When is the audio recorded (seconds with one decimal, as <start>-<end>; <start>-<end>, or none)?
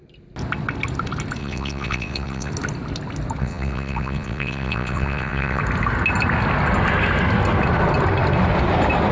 0.0-1.4; 2.5-3.4; 5.6-9.1